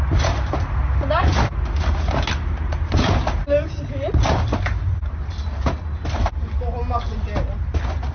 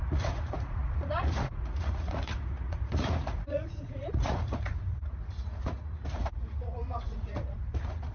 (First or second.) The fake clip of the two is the second